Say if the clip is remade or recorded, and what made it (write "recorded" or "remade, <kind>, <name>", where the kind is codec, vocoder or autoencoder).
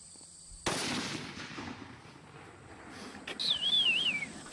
recorded